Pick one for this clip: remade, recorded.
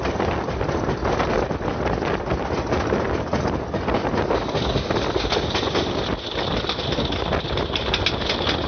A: recorded